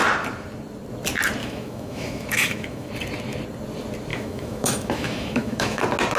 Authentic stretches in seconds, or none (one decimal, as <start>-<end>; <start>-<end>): 0.0-1.4; 2.9-4.1; 5.8-6.2